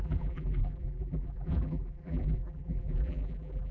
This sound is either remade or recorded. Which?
remade